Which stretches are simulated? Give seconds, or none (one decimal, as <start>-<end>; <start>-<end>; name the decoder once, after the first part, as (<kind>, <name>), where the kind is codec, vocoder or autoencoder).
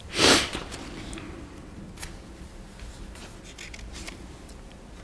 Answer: none